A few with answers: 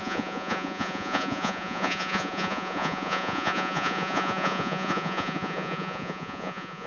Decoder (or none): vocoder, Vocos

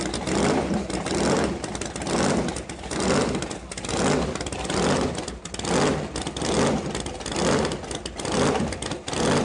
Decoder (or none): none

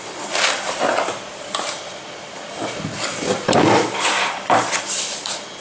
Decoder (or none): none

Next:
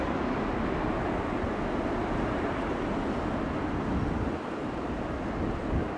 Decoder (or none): none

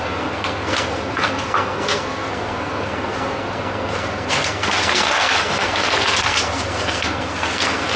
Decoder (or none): codec, SNAC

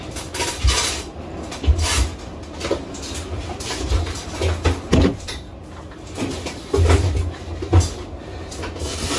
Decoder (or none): none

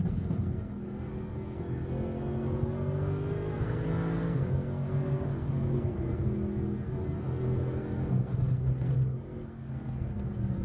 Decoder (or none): codec, SNAC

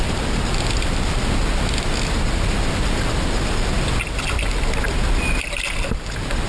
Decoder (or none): none